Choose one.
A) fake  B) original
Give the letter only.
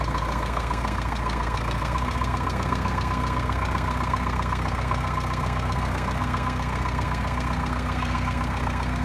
A